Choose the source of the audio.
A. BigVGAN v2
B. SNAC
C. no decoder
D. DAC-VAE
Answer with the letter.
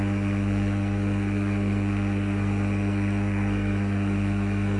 B